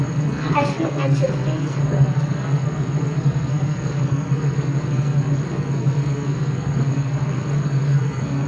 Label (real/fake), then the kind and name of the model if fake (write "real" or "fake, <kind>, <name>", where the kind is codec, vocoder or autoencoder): fake, codec, SNAC